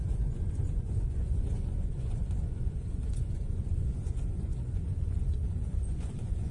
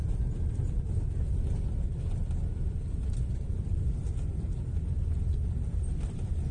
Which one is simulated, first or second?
first